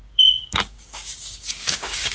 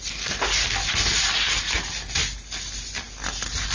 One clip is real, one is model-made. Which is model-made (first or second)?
first